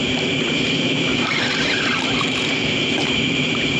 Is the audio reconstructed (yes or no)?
yes